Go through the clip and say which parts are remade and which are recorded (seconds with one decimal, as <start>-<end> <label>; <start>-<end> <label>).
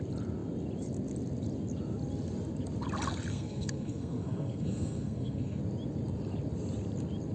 0.0-3.3 recorded; 3.3-5.6 remade; 5.6-7.3 recorded